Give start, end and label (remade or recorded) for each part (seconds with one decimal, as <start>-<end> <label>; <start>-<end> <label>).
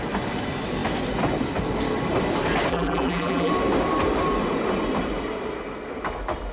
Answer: 0.0-2.7 recorded; 2.7-3.5 remade; 3.5-6.5 recorded